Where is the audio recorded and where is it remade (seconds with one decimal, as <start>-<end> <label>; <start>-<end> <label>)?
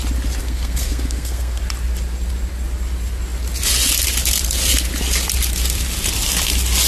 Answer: 0.0-0.4 recorded; 0.4-1.6 remade; 1.6-6.9 recorded